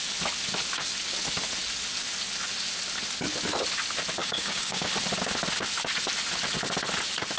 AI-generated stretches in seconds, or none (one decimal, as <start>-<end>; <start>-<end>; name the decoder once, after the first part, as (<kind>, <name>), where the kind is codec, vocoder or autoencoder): 4.2-4.9 (codec, DAC)